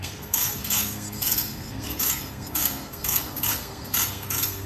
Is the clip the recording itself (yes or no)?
no